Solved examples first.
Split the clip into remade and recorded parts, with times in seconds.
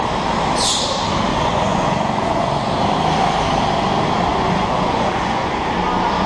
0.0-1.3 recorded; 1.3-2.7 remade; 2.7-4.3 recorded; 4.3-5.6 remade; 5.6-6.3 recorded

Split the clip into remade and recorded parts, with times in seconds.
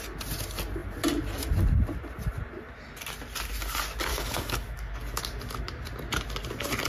0.0-4.1 recorded; 4.1-5.2 remade; 5.2-6.9 recorded